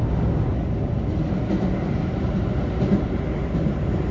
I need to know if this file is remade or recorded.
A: recorded